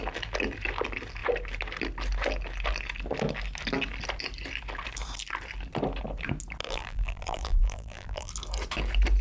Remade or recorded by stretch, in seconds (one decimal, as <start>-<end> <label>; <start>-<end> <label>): 0.0-6.6 recorded; 6.6-8.3 remade; 8.3-9.2 recorded